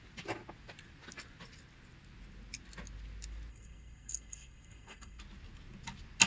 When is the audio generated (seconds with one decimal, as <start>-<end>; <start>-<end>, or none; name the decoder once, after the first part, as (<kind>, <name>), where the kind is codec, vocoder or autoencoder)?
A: 3.5-5.2 (codec, SNAC)